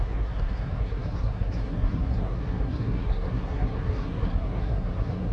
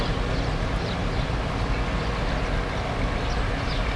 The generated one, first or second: first